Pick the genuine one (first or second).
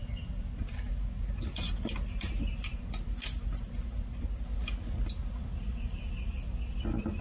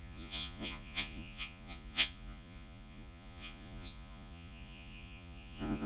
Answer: first